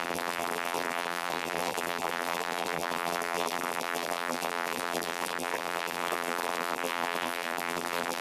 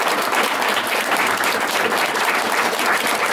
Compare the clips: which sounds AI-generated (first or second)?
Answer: first